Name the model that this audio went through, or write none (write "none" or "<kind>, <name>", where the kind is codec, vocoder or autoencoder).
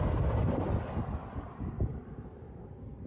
none